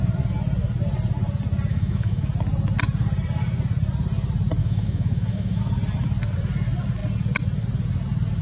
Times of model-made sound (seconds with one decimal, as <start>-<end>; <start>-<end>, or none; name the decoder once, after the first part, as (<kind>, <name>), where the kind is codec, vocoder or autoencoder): 1.7-2.2 (autoencoder, DAC-VAE); 4.6-5.6